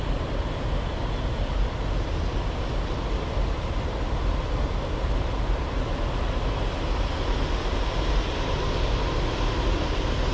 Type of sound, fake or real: real